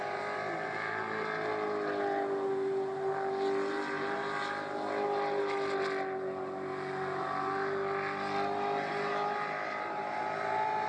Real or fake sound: real